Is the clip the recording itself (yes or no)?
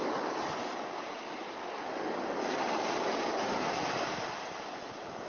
yes